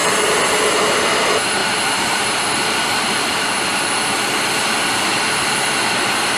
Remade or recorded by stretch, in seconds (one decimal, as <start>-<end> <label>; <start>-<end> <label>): 0.0-0.7 remade; 0.7-1.6 recorded; 1.6-3.8 remade; 3.8-6.4 recorded